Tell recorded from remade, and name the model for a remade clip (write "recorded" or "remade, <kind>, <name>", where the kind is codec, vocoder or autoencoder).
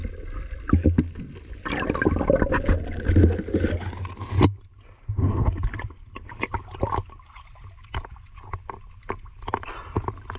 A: recorded